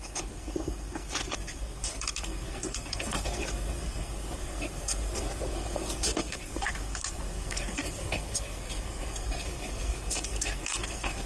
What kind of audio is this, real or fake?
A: fake